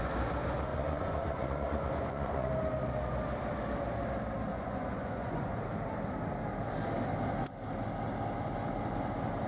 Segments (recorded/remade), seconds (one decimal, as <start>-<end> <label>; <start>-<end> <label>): 0.0-0.7 recorded; 0.7-2.5 remade; 2.5-4.5 recorded; 4.5-5.6 remade; 5.6-9.5 recorded